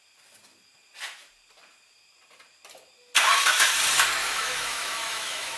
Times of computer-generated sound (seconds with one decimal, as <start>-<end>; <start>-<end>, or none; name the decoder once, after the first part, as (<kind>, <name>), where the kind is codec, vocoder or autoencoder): 4.2-5.6 (autoencoder, DAC-VAE)